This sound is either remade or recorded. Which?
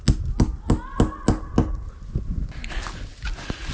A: recorded